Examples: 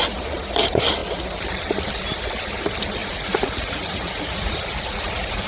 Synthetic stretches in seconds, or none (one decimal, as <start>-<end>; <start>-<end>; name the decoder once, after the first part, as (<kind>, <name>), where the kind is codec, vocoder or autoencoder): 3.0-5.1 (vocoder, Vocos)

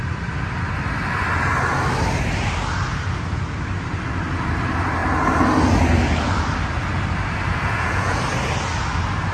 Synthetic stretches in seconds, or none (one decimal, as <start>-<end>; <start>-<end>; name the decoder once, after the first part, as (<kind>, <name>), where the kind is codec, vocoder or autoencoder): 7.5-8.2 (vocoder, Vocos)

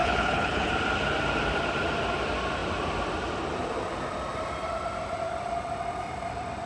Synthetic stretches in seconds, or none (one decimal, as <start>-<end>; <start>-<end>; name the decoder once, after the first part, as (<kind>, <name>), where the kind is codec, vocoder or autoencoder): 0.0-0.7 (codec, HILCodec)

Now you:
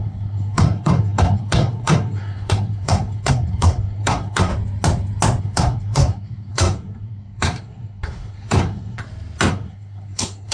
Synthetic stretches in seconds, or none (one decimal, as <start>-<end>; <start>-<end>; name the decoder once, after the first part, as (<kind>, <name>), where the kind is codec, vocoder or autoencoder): 0.0-4.5 (codec, SNAC); 5.4-9.0; 9.5-10.5